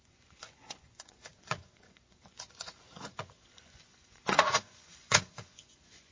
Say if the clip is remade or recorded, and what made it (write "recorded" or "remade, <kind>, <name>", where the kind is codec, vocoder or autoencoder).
remade, vocoder, Vocos